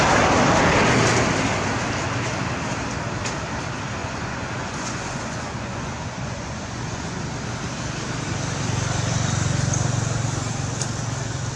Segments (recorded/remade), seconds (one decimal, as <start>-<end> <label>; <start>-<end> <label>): 0.0-4.0 recorded; 4.0-7.2 remade; 7.2-11.6 recorded